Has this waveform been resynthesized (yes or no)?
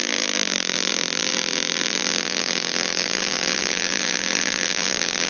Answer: yes